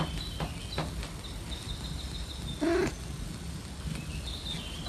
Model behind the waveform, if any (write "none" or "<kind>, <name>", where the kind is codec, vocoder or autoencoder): none